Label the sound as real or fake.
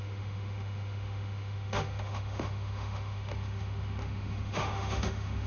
fake